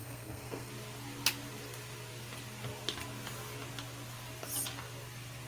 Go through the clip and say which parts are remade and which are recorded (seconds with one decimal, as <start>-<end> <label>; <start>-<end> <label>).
0.0-0.7 remade; 0.7-5.5 recorded